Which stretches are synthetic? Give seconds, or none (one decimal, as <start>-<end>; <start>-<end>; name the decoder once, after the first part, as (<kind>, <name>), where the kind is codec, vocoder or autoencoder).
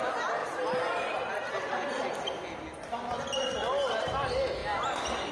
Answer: 0.4-1.5 (vocoder, BigVGAN v2); 4.6-5.3